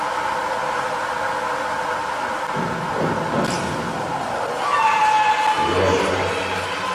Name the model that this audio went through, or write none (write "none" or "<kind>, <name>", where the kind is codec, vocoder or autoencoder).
none